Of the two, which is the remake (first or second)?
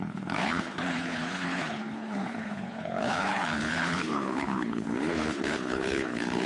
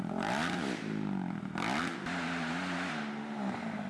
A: first